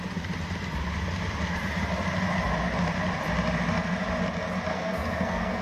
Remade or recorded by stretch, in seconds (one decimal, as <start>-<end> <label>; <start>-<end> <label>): 0.0-4.7 recorded; 4.7-5.6 remade

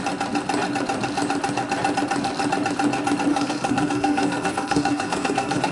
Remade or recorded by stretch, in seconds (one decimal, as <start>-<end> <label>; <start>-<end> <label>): 0.0-3.3 recorded; 3.3-5.7 remade

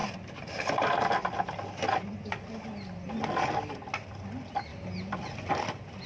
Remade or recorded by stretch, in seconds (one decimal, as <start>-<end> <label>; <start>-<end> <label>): 0.0-6.1 recorded

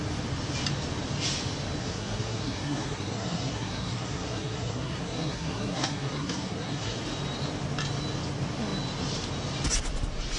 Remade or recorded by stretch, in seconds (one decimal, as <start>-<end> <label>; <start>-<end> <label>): 0.0-1.8 recorded; 1.8-7.0 remade; 7.0-10.4 recorded

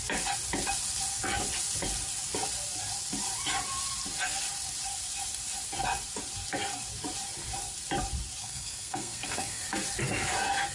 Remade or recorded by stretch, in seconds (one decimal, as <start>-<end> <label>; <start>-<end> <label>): 0.0-8.4 recorded; 8.4-9.6 remade; 9.6-10.7 recorded

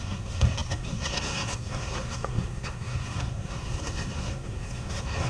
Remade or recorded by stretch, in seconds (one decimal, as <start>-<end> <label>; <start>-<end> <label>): 0.0-5.3 remade

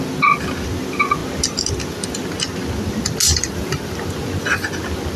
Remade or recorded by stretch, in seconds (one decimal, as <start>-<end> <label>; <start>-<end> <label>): 0.0-5.2 recorded

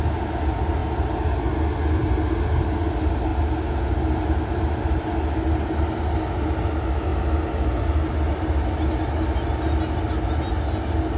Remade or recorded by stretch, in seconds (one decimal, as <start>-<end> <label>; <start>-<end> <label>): 0.0-11.2 recorded